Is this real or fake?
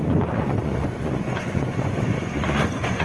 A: fake